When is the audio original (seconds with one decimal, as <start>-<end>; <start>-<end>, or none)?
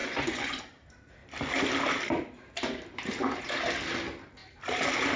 0.6-5.2